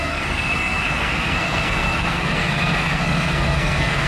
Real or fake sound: fake